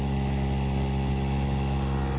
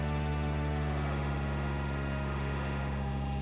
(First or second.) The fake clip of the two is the second